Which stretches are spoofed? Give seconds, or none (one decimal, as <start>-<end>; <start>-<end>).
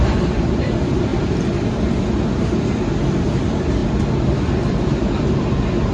none